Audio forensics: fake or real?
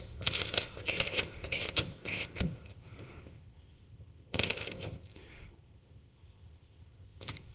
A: fake